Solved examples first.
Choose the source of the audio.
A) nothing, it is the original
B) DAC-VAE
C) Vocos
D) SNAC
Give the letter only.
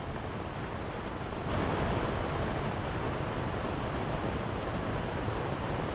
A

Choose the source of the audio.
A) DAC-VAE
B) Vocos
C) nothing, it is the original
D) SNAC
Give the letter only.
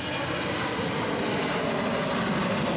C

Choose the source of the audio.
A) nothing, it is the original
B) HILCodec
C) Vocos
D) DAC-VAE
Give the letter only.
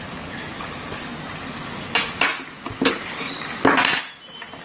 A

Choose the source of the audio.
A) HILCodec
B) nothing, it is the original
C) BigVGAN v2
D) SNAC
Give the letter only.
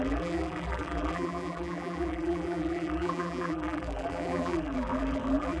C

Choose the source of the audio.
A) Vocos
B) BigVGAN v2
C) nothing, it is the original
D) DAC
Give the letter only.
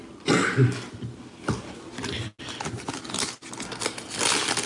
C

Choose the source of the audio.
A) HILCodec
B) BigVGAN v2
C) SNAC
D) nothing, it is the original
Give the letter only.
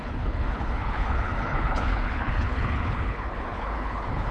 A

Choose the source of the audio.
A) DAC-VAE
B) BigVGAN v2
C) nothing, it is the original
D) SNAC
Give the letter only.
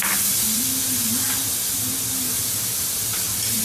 C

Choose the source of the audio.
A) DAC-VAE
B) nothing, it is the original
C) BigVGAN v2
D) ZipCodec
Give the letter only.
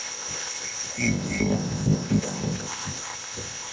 D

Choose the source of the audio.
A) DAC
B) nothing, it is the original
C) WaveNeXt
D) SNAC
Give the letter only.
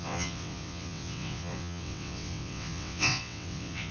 C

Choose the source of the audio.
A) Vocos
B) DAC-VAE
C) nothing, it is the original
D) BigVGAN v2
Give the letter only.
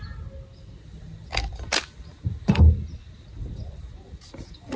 C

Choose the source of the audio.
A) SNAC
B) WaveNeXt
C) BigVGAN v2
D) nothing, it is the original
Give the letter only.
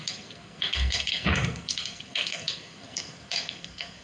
A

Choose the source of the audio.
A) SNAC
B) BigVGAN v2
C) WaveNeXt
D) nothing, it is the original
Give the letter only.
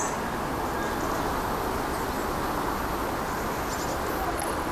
D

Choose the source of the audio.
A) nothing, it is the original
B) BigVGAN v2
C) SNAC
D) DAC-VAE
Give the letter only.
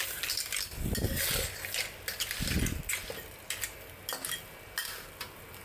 A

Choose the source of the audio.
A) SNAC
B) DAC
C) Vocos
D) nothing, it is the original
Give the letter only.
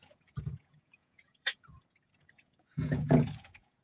C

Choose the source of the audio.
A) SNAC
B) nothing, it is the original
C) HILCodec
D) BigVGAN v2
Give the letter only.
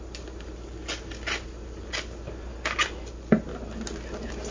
B